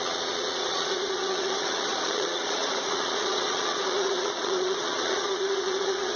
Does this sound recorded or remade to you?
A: remade